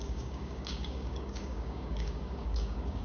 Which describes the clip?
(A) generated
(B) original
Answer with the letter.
A